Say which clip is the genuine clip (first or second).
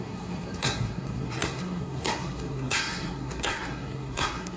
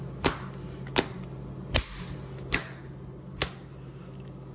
second